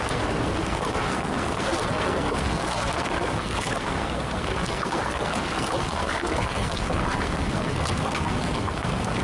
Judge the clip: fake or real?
fake